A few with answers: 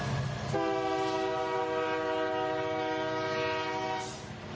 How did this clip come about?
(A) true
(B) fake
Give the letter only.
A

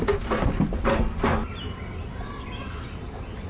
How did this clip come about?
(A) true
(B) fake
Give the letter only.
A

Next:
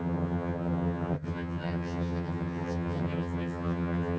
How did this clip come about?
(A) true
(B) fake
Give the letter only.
B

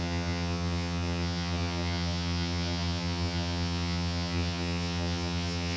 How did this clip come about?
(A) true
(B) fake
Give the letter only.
B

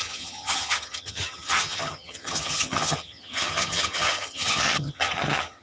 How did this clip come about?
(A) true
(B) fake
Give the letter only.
B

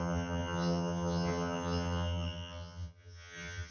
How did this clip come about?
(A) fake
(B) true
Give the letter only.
A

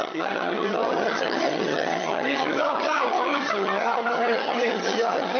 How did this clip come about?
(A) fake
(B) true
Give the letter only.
A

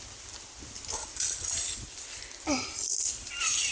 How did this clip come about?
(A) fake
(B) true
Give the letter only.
B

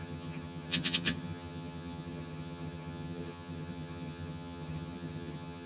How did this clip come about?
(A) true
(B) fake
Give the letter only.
B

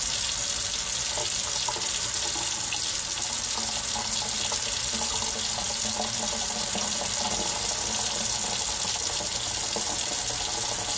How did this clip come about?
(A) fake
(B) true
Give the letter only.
B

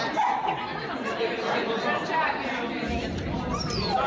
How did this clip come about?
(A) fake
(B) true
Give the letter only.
B